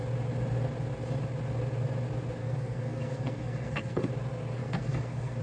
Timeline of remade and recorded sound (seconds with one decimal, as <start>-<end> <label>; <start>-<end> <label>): 0.0-2.4 recorded; 2.4-4.1 remade; 4.1-4.6 recorded; 4.6-5.4 remade